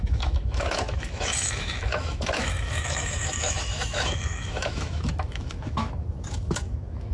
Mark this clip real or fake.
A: fake